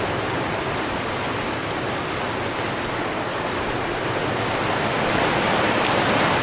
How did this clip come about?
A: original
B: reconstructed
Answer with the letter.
A